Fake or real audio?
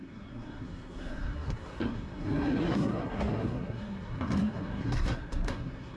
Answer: fake